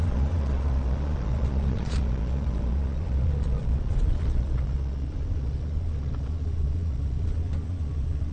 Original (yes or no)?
no